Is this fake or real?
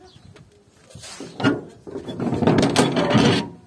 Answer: real